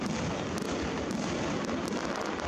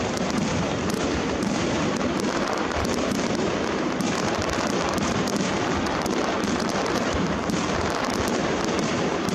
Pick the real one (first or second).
first